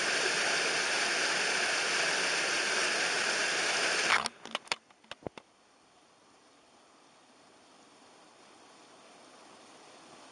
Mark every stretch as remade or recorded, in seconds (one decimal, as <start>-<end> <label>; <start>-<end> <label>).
0.0-10.3 recorded